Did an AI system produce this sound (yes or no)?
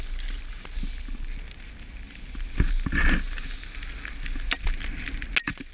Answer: no